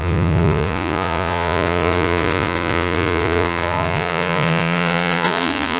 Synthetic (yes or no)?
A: yes